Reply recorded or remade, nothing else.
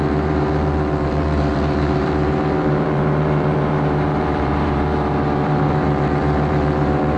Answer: remade